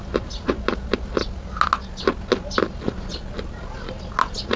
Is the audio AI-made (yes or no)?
no